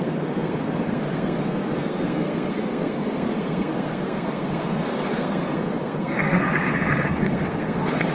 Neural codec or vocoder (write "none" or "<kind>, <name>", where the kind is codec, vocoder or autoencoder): codec, SNAC